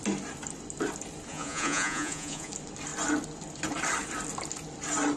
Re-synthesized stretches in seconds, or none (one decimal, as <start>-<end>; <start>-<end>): 1.3-2.5